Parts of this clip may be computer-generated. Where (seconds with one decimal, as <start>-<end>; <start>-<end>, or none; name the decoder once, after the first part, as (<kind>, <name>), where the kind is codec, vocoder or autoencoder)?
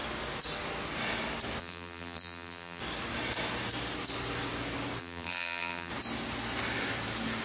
1.6-2.8 (vocoder, BigVGAN v2); 5.0-5.9